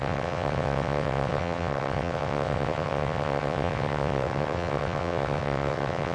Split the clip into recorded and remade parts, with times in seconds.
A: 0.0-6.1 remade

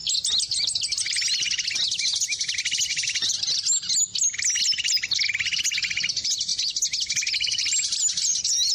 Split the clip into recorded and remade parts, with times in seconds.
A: 0.0-8.7 recorded

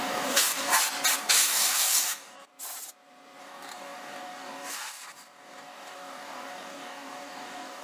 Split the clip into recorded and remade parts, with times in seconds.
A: 0.0-0.7 remade; 0.7-1.2 recorded; 1.2-2.5 remade; 2.5-3.4 recorded; 3.4-7.8 remade